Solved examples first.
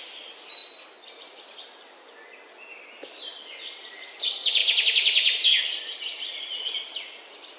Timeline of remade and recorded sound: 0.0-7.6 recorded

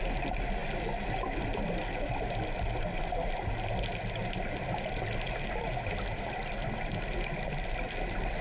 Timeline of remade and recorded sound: 0.0-8.4 recorded

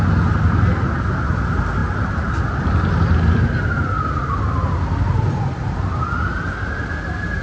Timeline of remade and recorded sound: 0.0-7.4 recorded

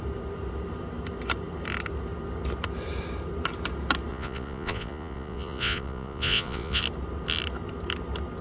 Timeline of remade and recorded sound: 0.0-4.1 recorded; 4.1-6.8 remade; 6.8-8.4 recorded

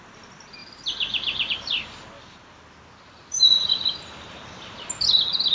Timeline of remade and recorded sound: 0.0-5.5 recorded